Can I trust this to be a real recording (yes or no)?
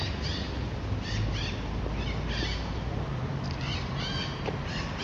yes